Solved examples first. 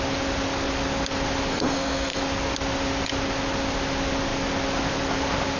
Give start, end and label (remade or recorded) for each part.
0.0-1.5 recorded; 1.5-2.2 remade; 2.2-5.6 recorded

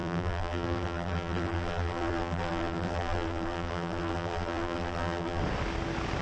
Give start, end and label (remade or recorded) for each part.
0.0-5.4 remade; 5.4-6.2 recorded

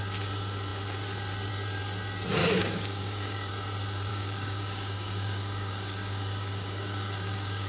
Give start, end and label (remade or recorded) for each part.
0.0-2.4 recorded; 2.4-3.5 remade; 3.5-4.1 recorded; 4.1-7.7 remade

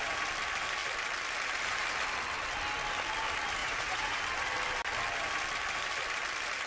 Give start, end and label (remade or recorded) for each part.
0.0-3.6 recorded; 3.6-4.2 remade; 4.2-6.7 recorded

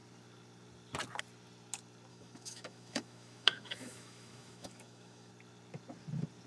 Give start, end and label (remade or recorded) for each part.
0.0-2.1 recorded; 2.1-5.3 remade; 5.3-6.5 recorded

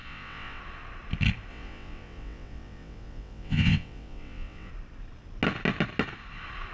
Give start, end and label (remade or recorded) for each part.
0.0-0.6 remade; 0.6-1.5 recorded; 1.5-4.7 remade; 4.7-6.7 recorded